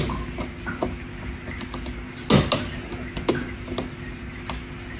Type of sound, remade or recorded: recorded